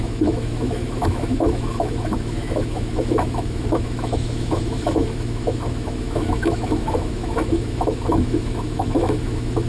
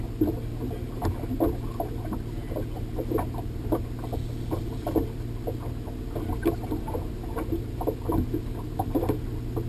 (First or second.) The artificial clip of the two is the first